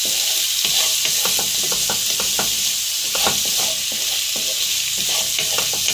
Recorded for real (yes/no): yes